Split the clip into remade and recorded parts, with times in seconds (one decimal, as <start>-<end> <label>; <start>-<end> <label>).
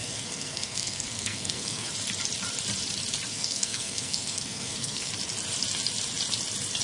0.0-1.9 remade; 1.9-3.3 recorded; 3.3-5.1 remade; 5.1-6.8 recorded